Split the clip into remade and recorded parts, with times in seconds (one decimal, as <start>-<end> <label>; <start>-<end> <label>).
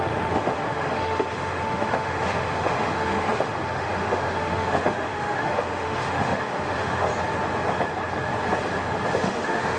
0.0-7.1 remade; 7.1-9.2 recorded; 9.2-9.8 remade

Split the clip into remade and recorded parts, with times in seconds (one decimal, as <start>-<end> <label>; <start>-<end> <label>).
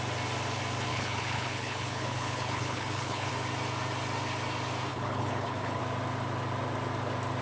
0.0-0.9 recorded; 0.9-3.3 remade; 3.3-4.9 recorded; 4.9-5.8 remade; 5.8-7.4 recorded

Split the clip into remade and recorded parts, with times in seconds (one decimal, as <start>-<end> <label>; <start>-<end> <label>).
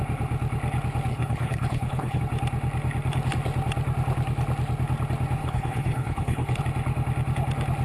0.0-1.1 recorded; 1.1-2.2 remade; 2.2-5.4 recorded; 5.4-6.6 remade; 6.6-7.8 recorded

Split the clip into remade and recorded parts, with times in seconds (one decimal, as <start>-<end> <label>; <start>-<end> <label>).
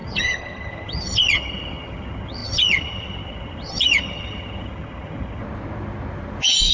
0.0-5.4 remade; 5.4-6.7 recorded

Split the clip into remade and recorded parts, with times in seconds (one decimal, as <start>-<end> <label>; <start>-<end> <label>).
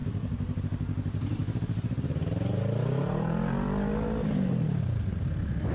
0.0-0.6 remade; 0.6-5.7 recorded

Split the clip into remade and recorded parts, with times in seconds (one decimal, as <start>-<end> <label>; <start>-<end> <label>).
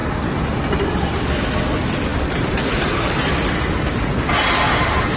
0.0-5.2 recorded